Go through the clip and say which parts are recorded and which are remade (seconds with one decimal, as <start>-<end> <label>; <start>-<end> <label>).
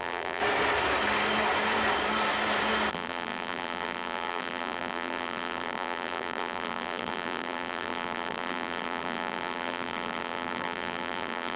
0.0-0.4 remade; 0.4-2.9 recorded; 2.9-11.6 remade